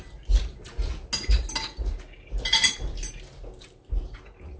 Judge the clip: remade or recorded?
recorded